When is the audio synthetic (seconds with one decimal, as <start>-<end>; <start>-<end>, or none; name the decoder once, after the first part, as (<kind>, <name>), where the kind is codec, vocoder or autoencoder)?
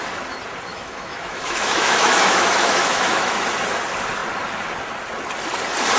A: 0.7-3.4 (autoencoder, DAC-VAE)